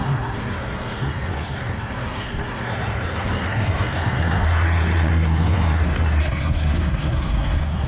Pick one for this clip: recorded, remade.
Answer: remade